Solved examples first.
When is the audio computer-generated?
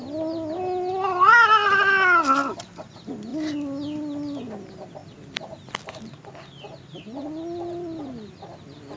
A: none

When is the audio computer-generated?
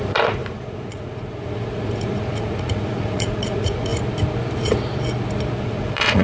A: 0.0-3.9 (vocoder, Vocos); 5.6-6.2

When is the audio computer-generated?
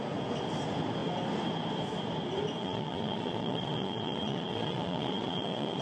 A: 2.6-5.8 (vocoder, Vocos)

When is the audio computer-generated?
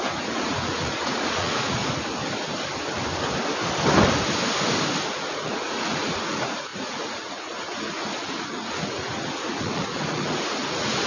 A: 0.0-1.8 (vocoder, Vocos); 5.1-11.1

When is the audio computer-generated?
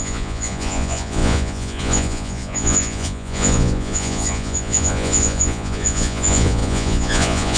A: 0.0-7.6 (vocoder, Vocos)